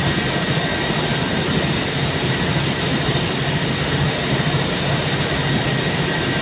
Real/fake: real